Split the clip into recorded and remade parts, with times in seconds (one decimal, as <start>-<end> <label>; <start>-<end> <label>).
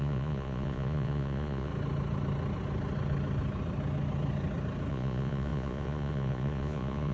0.0-1.7 remade; 1.7-4.9 recorded; 4.9-7.1 remade